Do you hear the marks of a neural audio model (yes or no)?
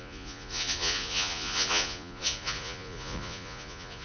yes